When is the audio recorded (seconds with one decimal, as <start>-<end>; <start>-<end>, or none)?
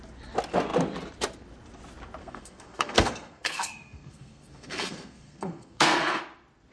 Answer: 0.0-2.2; 6.2-6.7